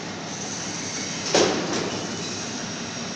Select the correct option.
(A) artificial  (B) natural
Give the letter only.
B